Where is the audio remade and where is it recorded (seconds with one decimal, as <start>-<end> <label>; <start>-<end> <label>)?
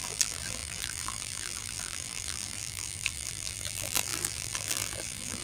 0.0-5.4 remade